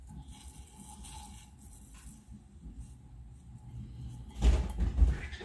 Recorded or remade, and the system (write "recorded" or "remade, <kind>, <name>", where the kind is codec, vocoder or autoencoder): recorded